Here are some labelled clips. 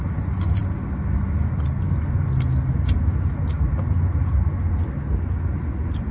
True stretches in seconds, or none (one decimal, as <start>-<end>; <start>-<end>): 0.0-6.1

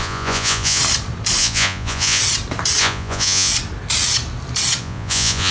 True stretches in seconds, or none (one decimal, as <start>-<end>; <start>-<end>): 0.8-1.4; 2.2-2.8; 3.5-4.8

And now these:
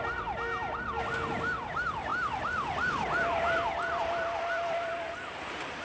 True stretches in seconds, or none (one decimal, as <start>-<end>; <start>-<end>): 0.0-5.8

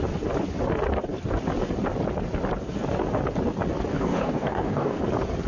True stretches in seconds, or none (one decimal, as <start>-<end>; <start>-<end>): 0.0-3.9; 5.0-5.5

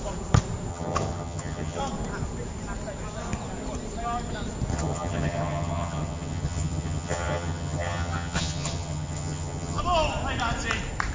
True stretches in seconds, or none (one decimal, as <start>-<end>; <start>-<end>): 0.0-0.7; 1.8-4.7; 9.8-11.1

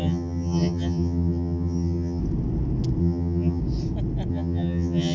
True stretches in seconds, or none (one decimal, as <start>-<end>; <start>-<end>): 2.2-3.0; 3.6-4.3

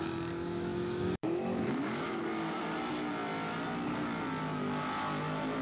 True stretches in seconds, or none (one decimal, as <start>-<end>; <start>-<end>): 0.0-0.7; 2.6-5.6

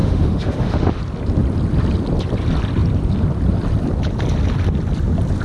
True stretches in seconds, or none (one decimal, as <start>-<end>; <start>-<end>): 1.0-5.4